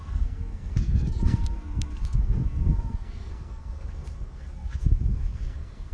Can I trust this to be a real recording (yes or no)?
no